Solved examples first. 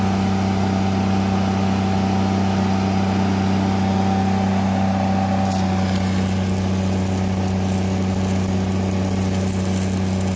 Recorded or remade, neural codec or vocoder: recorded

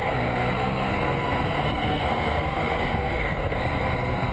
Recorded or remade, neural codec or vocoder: remade, codec, SNAC